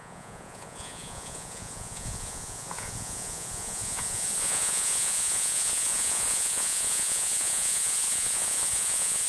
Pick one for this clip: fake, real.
fake